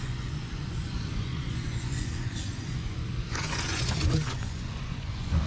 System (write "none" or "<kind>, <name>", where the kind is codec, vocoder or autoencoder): vocoder, Vocos